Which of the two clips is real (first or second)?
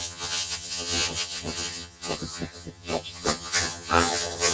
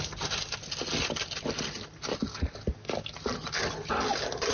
second